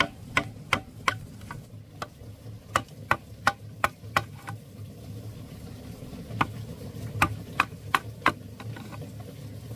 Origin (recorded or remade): recorded